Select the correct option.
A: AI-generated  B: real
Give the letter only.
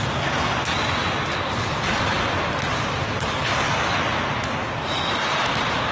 B